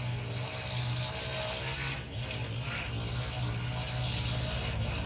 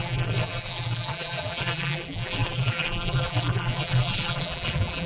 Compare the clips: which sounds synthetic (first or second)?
second